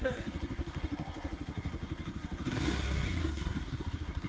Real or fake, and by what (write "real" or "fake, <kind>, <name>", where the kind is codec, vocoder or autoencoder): fake, codec, SNAC